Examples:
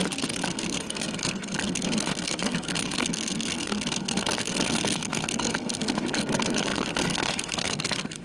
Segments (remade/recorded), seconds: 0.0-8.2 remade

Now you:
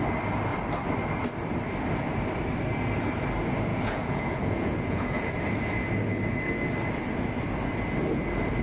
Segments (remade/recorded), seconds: 0.0-3.7 recorded; 3.7-5.3 remade; 5.3-8.6 recorded

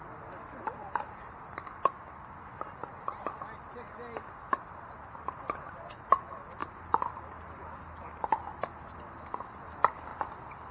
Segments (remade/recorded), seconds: 0.0-10.7 recorded

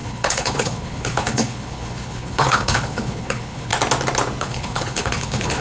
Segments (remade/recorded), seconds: 0.0-3.7 remade; 3.7-4.4 recorded; 4.4-5.6 remade

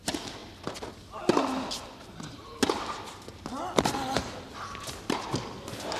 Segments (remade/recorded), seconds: 0.0-6.0 recorded

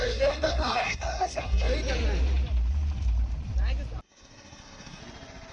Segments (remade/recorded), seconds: 0.0-1.7 remade; 1.7-4.0 recorded; 4.0-5.0 remade; 5.0-5.5 recorded